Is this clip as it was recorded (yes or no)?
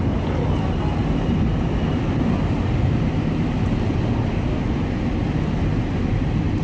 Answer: yes